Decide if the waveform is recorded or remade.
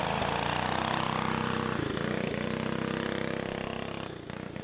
recorded